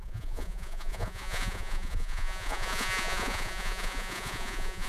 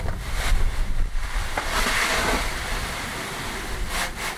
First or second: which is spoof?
first